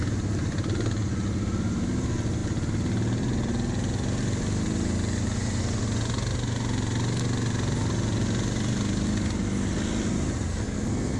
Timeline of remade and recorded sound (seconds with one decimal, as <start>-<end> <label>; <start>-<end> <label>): 0.0-10.5 recorded; 10.5-11.2 remade